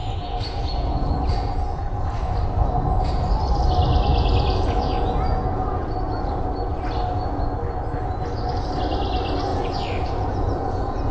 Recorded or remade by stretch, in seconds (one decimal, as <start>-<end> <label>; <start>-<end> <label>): 0.0-3.3 remade; 3.3-4.1 recorded; 4.1-6.4 remade; 6.4-9.5 recorded; 9.5-11.1 remade